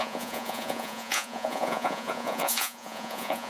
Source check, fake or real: fake